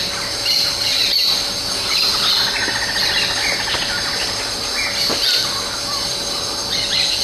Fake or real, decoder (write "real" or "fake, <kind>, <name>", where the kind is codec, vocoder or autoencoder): real